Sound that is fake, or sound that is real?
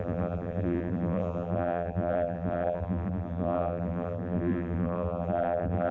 fake